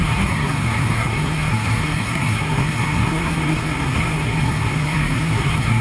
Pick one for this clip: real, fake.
fake